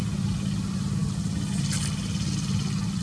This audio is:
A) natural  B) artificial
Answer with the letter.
A